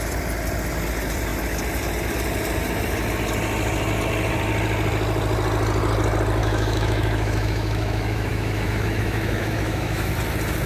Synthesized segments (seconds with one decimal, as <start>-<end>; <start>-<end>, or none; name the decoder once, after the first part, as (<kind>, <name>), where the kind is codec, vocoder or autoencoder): 6.4-10.1 (autoencoder, DAC-VAE)